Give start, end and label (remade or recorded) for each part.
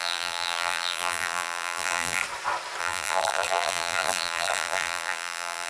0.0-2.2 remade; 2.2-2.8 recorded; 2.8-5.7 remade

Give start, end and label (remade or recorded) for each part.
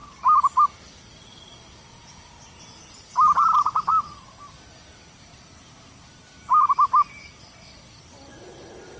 0.0-3.9 recorded; 3.9-6.9 remade; 6.9-9.0 recorded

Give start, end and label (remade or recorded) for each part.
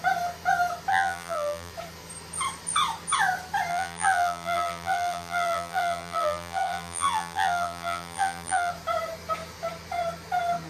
0.0-0.9 recorded; 0.9-1.7 remade; 1.7-3.7 recorded; 3.7-8.7 remade; 8.7-10.7 recorded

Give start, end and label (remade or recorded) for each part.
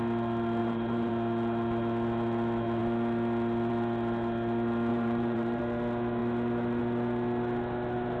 0.0-0.6 recorded; 0.6-1.1 remade; 1.1-4.9 recorded; 4.9-5.6 remade; 5.6-8.2 recorded